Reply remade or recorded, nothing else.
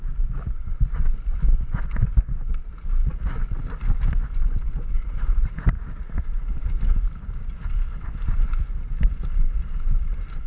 recorded